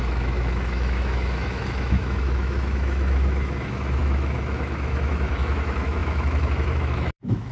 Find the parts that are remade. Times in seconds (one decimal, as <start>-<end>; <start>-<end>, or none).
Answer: 0.0-7.5